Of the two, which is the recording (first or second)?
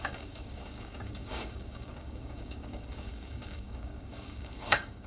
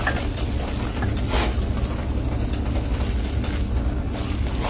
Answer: second